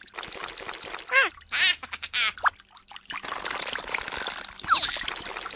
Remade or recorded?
recorded